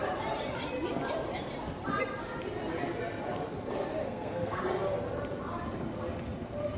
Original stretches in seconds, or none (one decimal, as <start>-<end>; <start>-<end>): 0.0-4.0; 4.6-6.8